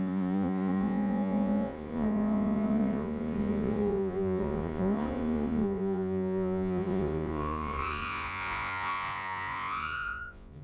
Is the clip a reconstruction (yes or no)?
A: yes